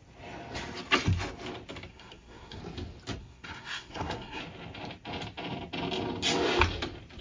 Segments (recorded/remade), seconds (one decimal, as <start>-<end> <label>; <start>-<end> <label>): 0.0-1.9 recorded; 1.9-2.6 remade; 2.6-3.2 recorded; 3.2-4.4 remade; 4.4-7.2 recorded